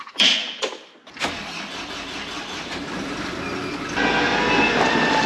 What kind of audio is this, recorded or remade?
recorded